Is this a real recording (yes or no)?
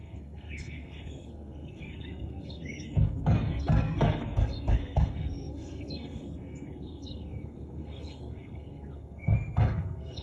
no